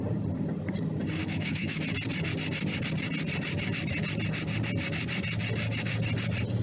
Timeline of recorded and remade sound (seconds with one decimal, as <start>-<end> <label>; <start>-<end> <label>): 0.0-1.2 recorded; 1.2-1.8 remade; 1.8-6.6 recorded